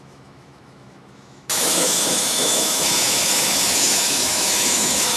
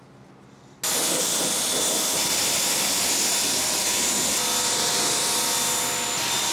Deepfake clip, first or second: first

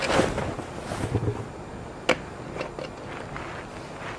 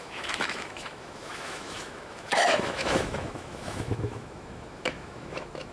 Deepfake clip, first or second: second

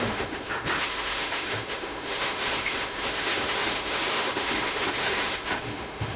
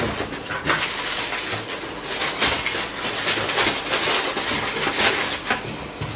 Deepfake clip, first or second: first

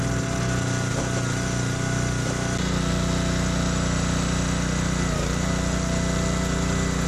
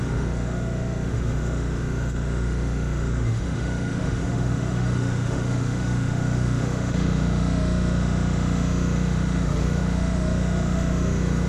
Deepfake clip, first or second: second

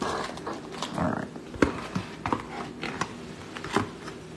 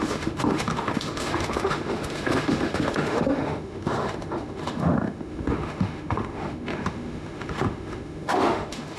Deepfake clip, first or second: second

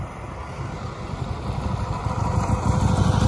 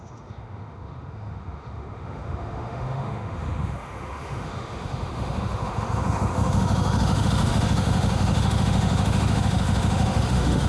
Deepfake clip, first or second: second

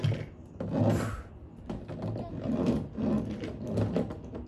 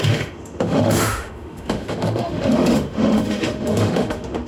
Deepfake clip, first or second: second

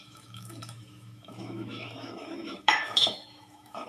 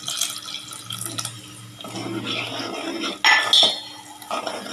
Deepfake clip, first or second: first